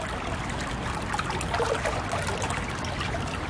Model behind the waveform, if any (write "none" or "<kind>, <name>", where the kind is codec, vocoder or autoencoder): none